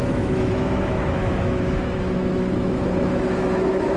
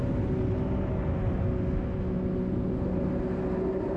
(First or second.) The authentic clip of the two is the second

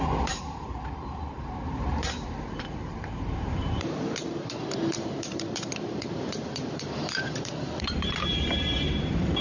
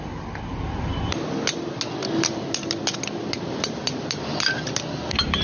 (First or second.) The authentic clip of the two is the second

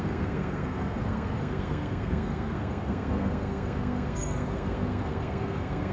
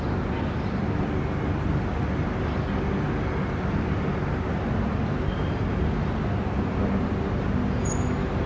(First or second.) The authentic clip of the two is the second